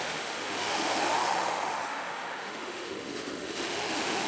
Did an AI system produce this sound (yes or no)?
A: yes